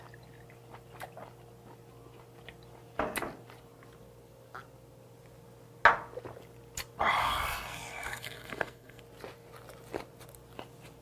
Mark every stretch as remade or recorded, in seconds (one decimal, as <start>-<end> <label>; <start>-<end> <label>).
0.0-7.2 recorded; 7.2-9.0 remade; 9.0-11.0 recorded